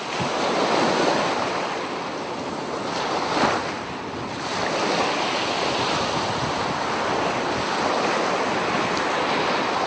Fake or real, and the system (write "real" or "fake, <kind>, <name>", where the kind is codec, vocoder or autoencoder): real